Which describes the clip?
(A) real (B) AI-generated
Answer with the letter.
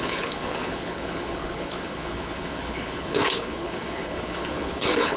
B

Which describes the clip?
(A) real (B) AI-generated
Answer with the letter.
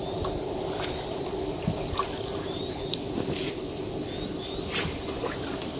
A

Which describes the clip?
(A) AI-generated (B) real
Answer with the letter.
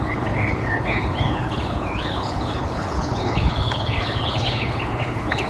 A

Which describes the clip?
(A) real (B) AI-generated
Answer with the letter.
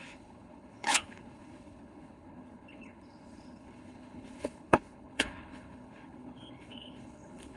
B